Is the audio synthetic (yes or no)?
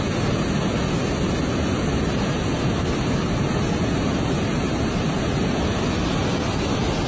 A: no